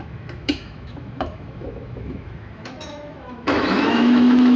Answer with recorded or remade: remade